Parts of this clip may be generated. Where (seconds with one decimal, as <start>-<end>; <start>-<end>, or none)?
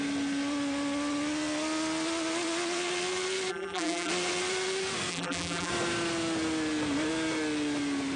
3.5-4.1; 5.1-5.7